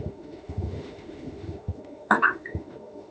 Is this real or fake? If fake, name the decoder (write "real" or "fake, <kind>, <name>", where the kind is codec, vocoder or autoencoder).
fake, autoencoder, DAC-VAE